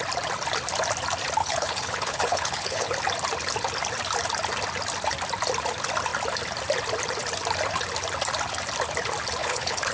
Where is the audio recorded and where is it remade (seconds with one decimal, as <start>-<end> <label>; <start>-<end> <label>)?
0.0-1.4 recorded; 1.4-2.9 remade; 2.9-9.4 recorded; 9.4-9.9 remade